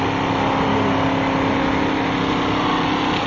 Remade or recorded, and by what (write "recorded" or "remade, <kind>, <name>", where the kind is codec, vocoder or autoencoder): recorded